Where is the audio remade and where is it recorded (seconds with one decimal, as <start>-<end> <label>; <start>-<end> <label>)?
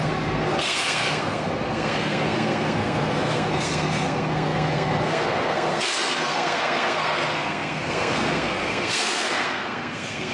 0.0-10.3 remade